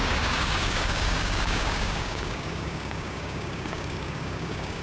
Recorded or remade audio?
remade